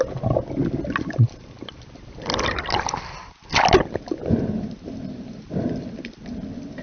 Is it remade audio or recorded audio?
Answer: recorded